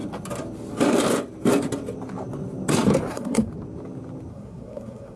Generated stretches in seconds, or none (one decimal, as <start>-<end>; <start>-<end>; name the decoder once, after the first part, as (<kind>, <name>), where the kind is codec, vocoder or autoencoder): 3.1-3.5 (codec, SNAC); 4.3-5.2